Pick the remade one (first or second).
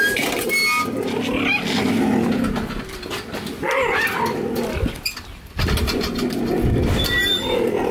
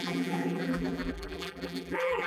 second